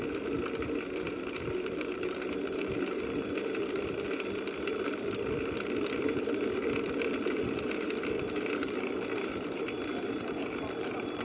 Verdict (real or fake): real